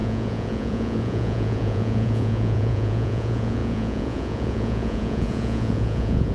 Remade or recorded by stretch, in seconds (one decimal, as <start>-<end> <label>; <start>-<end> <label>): 0.0-6.3 remade